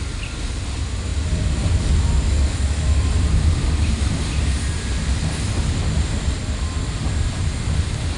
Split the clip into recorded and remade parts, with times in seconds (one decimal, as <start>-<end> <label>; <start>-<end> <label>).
0.0-1.1 recorded; 1.1-4.1 remade; 4.1-8.2 recorded